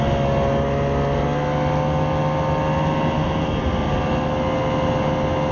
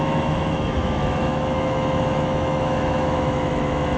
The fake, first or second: second